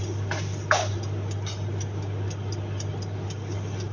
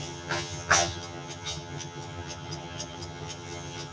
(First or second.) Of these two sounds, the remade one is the second